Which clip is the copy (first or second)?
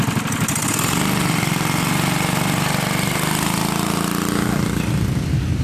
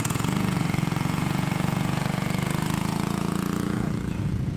second